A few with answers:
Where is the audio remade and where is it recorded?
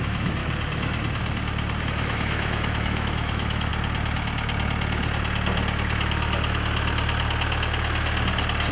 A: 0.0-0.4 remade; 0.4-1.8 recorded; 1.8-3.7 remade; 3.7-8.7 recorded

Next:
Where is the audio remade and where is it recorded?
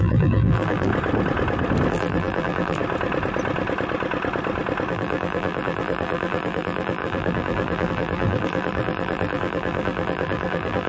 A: 0.0-0.9 remade; 0.9-1.9 recorded; 1.9-2.8 remade; 2.8-4.9 recorded; 4.9-10.9 remade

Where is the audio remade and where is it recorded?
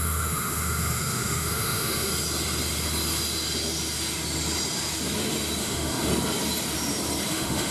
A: 0.0-2.1 remade; 2.1-5.6 recorded; 5.6-6.1 remade; 6.1-7.3 recorded; 7.3-7.7 remade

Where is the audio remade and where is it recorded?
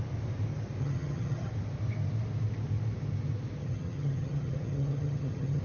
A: 0.0-0.8 recorded; 0.8-1.5 remade; 1.5-3.6 recorded; 3.6-5.6 remade